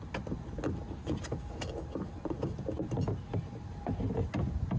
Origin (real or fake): real